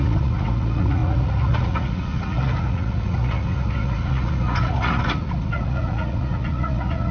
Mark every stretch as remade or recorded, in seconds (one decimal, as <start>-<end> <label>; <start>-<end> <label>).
0.0-7.1 remade